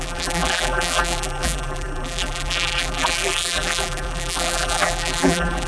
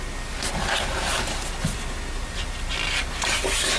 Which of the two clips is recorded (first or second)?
second